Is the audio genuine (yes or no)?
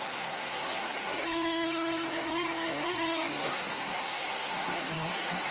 no